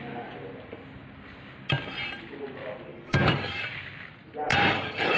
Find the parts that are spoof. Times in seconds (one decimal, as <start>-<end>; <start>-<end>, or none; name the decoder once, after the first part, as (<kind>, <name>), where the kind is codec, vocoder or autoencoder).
2.9-3.6 (codec, DAC); 4.5-5.2